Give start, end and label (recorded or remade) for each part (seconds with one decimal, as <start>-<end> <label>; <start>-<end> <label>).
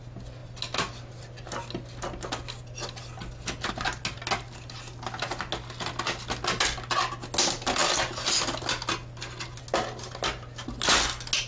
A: 0.0-11.5 recorded